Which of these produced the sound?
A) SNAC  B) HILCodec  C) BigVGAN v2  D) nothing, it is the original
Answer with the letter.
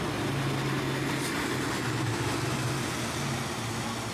D